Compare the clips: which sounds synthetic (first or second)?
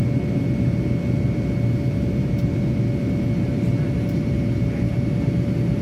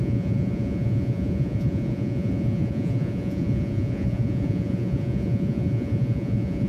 second